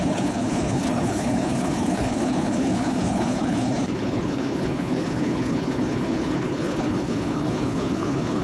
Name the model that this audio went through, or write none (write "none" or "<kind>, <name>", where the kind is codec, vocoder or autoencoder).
codec, HILCodec